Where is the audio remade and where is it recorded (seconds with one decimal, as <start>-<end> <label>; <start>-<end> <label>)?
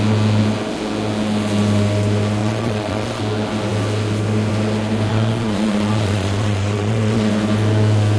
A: 0.0-2.4 recorded; 2.4-3.2 remade; 3.2-5.1 recorded; 5.1-7.3 remade; 7.3-8.2 recorded